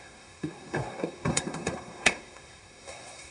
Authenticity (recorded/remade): remade